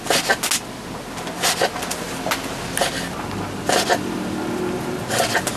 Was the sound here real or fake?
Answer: real